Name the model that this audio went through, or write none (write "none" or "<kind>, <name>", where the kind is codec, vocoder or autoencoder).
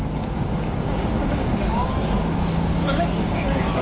codec, DAC